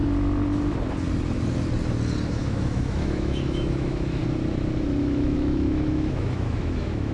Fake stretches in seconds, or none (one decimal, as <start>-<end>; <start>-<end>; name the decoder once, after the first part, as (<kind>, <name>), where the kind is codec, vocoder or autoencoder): 2.3-4.2 (autoencoder, DAC-VAE); 5.0-7.1